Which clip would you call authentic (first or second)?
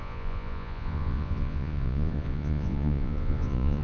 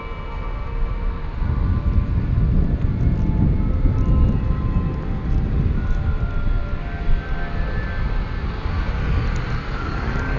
second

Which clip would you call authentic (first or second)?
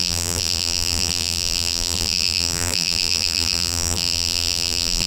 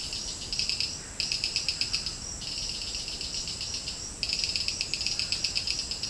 second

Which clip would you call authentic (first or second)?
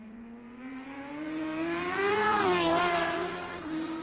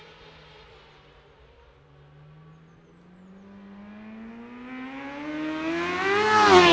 second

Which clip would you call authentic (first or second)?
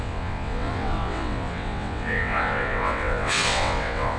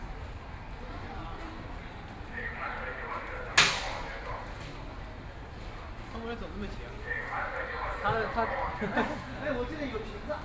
second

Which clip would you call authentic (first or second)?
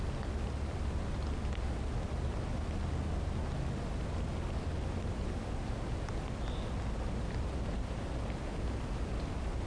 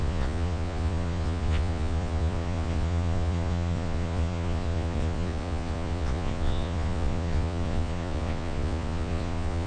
first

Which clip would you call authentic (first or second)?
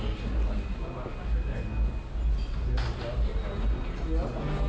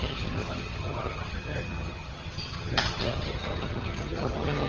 first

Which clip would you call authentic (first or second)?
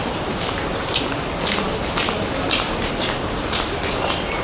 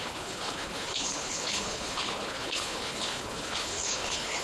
first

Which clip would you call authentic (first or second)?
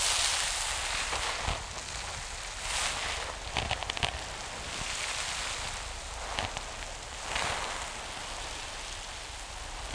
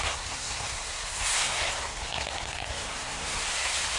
first